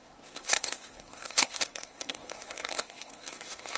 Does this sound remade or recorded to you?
remade